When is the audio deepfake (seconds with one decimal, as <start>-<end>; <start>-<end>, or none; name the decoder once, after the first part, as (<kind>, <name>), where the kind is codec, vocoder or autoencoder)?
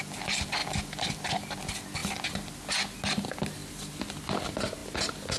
none